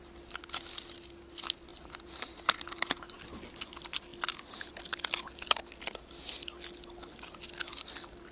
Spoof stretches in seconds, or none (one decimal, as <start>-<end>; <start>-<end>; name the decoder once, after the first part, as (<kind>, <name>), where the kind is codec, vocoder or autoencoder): 1.7-3.2 (vocoder, BigVGAN v2)